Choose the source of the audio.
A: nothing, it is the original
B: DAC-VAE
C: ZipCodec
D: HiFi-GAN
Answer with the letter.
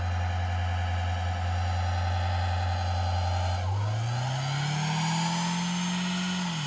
A